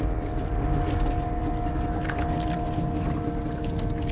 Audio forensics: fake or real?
real